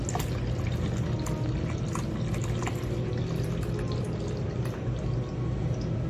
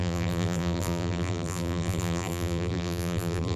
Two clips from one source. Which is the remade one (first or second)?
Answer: second